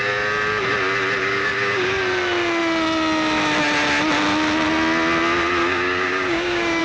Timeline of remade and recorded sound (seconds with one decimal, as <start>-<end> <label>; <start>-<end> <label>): 0.0-1.2 recorded; 1.2-2.0 remade; 2.0-5.6 recorded; 5.6-6.8 remade